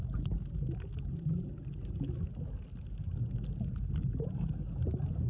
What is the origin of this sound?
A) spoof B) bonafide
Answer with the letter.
B